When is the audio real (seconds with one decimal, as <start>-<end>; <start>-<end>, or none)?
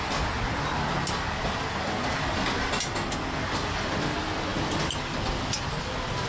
0.0-6.3